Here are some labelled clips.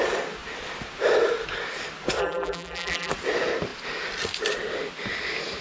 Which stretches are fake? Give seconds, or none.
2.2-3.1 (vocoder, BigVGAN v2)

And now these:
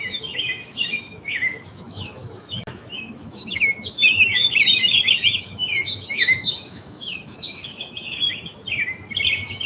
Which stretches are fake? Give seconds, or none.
0.0-8.5 (autoencoder, DAC-VAE)

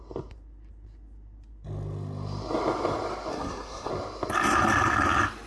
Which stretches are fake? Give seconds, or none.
3.3-3.9 (codec, SNAC)

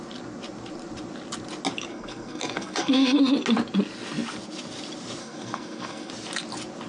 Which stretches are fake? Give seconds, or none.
1.9-3.2 (codec, SNAC); 5.2-6.1